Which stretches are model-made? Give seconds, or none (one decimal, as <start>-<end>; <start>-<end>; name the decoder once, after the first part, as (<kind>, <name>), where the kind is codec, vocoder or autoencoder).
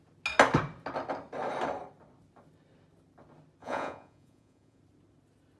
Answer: 3.6-4.8 (vocoder, Vocos)